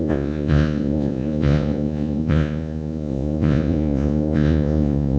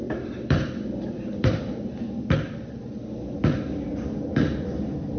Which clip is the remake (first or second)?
first